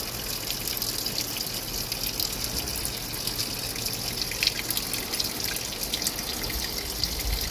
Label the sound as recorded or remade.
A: recorded